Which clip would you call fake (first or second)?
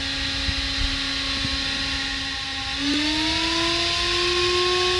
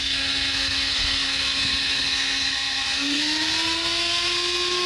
second